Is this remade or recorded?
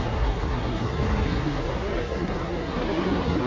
remade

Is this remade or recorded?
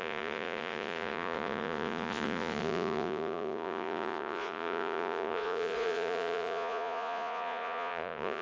remade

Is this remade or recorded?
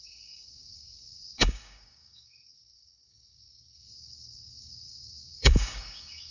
remade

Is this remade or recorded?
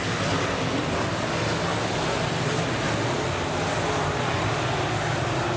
recorded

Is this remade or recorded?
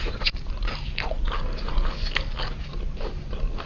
recorded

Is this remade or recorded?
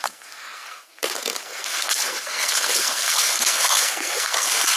remade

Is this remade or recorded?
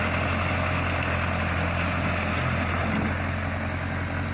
recorded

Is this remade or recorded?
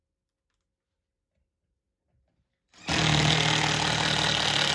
recorded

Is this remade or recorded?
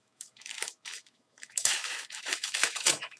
remade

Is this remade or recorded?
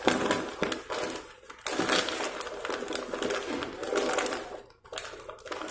recorded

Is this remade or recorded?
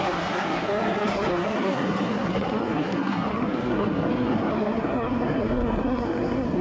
remade